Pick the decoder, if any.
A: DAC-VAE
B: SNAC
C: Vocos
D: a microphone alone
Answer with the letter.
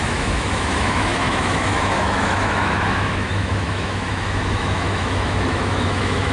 A